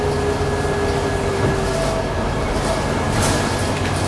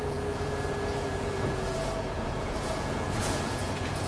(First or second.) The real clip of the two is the first